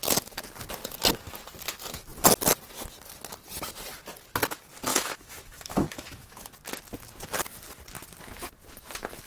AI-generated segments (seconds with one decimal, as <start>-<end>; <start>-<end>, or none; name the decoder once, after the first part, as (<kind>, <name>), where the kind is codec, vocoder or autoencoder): 4.9-6.5 (autoencoder, DAC-VAE)